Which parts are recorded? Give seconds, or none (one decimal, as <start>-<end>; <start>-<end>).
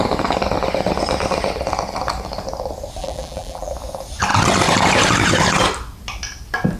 0.0-3.0; 3.7-6.8